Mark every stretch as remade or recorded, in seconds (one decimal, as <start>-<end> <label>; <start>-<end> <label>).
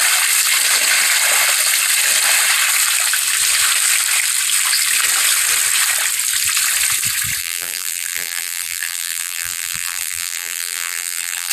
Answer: 0.0-7.4 recorded; 7.4-11.5 remade